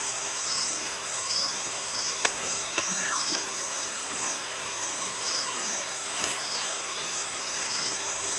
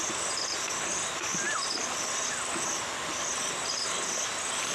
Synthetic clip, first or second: first